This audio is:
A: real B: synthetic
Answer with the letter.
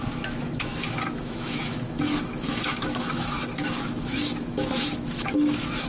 B